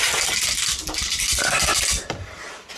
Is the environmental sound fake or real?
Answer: real